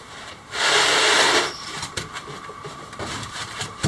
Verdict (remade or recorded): remade